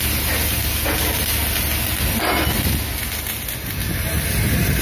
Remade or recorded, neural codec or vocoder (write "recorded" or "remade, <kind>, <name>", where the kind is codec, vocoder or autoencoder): recorded